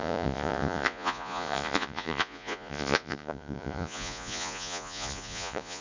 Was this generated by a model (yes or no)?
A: yes